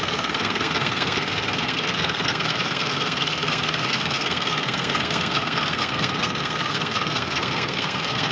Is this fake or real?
fake